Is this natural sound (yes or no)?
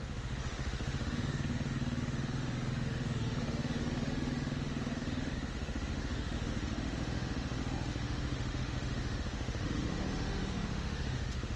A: no